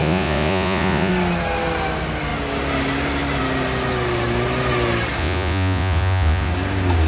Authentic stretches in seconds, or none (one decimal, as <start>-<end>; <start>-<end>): 1.1-5.2; 6.5-7.1